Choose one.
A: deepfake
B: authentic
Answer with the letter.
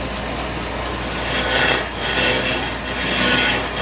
B